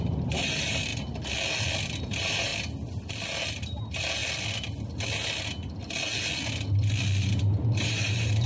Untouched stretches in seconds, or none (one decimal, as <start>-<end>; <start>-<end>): 0.9-2.0; 2.5-3.5; 4.2-7.2